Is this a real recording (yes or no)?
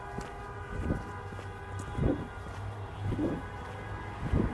yes